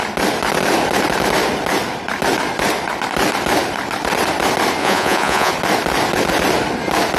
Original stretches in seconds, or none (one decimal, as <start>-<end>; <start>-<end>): 0.0-4.8; 5.5-7.2